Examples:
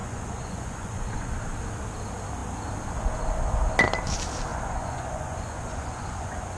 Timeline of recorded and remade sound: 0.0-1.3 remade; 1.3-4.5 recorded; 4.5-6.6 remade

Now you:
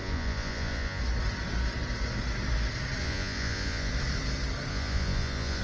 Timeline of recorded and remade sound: 0.0-1.0 remade; 1.0-3.0 recorded; 3.0-3.9 remade; 3.9-4.7 recorded; 4.7-5.6 remade

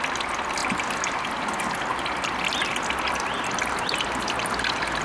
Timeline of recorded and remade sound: 0.0-5.0 recorded

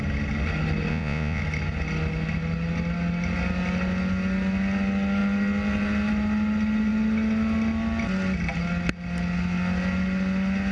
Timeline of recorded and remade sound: 0.0-0.9 recorded; 0.9-1.4 remade; 1.4-10.7 recorded

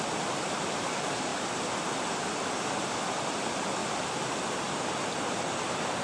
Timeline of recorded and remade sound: 0.0-6.0 recorded

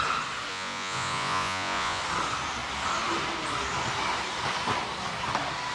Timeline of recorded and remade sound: 0.0-0.5 recorded; 0.5-2.0 remade; 2.0-5.7 recorded

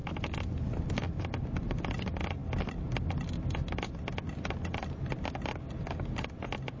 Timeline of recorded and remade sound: 0.0-6.8 recorded